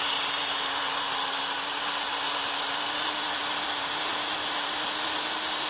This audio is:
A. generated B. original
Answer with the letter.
B